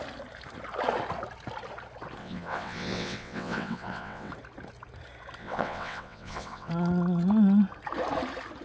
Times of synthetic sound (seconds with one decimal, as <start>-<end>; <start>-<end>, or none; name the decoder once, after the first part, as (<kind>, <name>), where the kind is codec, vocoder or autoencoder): 2.2-4.3 (vocoder, WaveNeXt); 5.4-6.7